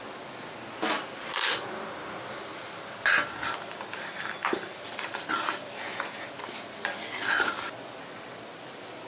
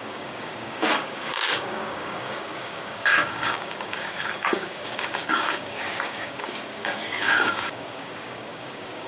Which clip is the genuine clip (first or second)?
first